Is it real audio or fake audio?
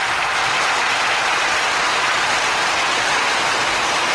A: real